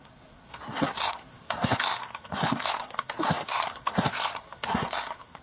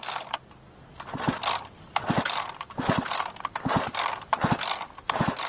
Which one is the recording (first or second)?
second